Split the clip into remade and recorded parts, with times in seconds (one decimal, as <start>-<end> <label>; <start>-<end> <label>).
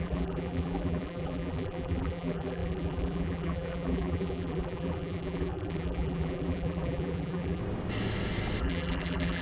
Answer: 0.0-7.6 remade; 7.6-8.6 recorded; 8.6-9.4 remade